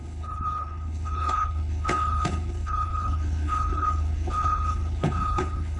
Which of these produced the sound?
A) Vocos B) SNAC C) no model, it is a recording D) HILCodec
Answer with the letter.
D